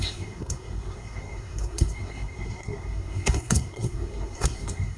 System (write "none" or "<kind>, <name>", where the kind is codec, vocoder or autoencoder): codec, SNAC